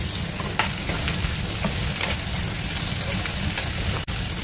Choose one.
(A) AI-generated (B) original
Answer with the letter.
B